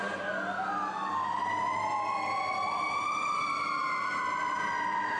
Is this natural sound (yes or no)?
yes